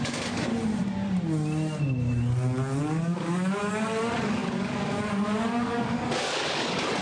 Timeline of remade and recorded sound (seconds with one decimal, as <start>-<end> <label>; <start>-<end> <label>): 0.0-0.5 remade; 0.5-2.8 recorded; 2.8-7.0 remade